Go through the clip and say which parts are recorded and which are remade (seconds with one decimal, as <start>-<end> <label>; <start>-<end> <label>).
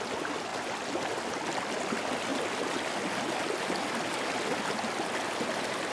0.0-5.9 recorded